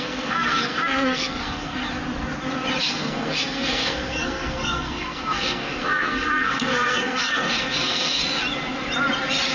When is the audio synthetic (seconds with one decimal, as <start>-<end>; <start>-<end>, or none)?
0.0-1.8; 2.8-8.2